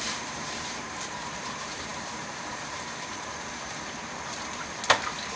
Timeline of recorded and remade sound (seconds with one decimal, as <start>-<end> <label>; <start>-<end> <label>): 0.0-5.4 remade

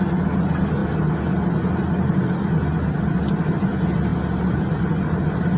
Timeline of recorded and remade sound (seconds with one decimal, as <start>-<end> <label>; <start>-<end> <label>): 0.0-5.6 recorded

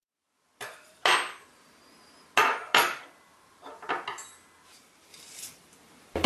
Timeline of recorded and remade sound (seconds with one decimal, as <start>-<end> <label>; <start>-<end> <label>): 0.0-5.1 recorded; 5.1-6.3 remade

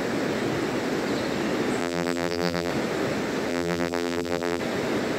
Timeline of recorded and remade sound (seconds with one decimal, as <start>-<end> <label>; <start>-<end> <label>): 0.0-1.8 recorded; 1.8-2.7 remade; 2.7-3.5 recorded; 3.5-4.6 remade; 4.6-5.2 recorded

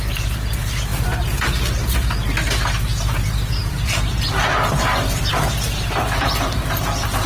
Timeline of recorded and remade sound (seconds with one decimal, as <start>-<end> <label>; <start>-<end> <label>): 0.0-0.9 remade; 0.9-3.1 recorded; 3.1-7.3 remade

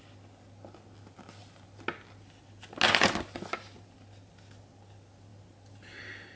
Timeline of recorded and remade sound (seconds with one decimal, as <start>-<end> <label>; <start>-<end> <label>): 0.0-6.4 recorded

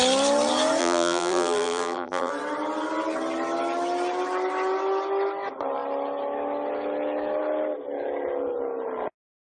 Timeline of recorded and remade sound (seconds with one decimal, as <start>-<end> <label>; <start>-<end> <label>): 0.0-0.8 recorded; 0.8-2.3 remade; 2.3-9.5 recorded